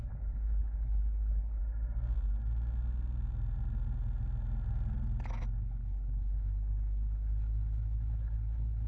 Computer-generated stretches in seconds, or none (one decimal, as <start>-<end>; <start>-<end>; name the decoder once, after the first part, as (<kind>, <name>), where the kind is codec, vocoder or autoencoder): 0.0-1.6 (codec, HILCodec); 5.6-8.9